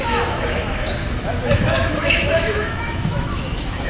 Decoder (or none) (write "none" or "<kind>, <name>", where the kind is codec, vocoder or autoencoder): autoencoder, DAC-VAE